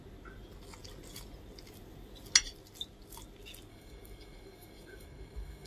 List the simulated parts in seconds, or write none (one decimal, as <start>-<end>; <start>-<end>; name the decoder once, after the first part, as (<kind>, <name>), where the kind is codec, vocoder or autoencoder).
3.7-5.7 (codec, DAC)